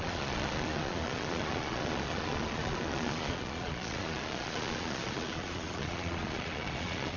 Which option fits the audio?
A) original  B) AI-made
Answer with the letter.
B